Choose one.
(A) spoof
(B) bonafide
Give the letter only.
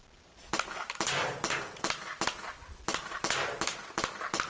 B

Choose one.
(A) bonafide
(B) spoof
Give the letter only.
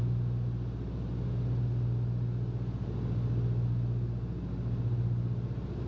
A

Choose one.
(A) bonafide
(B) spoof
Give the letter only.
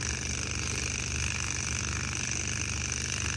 A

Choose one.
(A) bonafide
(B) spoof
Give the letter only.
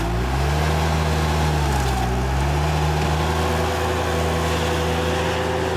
A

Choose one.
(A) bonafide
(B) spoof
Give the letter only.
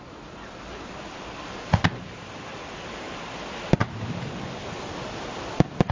A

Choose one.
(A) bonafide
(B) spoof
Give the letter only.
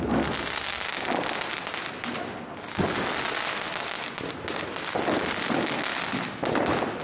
A